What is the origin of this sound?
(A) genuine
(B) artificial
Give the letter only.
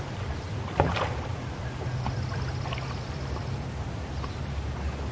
A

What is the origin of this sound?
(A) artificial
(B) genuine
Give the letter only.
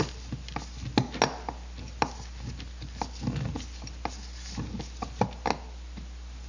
B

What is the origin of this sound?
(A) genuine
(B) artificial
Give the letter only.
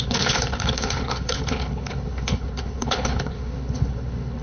B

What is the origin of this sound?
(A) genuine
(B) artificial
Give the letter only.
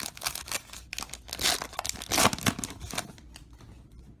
A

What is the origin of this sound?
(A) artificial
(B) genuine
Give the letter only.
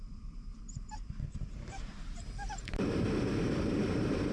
A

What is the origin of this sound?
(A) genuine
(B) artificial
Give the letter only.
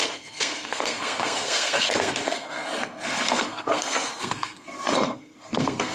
B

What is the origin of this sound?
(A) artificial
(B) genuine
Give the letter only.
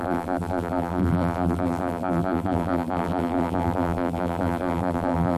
A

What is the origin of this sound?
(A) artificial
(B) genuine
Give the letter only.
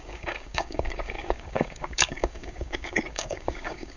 A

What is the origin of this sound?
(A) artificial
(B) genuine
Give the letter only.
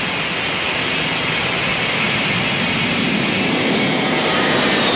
B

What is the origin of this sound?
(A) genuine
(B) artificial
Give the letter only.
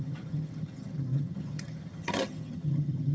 B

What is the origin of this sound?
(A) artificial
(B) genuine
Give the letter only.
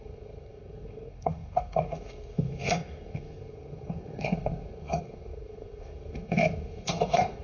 A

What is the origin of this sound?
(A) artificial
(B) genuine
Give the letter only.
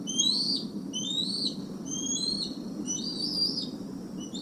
B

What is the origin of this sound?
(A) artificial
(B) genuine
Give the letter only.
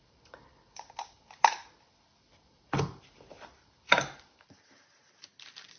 B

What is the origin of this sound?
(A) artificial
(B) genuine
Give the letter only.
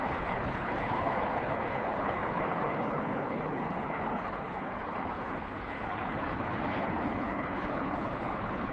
A